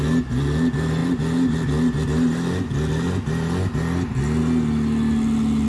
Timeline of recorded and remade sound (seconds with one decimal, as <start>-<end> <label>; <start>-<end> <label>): 0.0-5.7 recorded